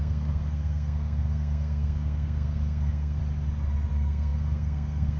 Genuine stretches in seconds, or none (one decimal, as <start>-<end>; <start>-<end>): 3.2-3.9